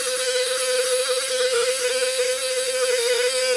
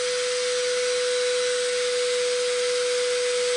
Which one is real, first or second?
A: second